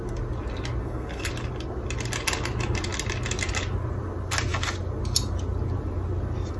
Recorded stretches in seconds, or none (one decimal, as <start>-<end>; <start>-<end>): 0.0-0.8; 1.3-6.6